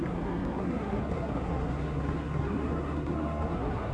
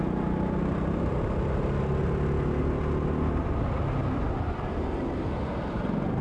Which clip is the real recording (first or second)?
second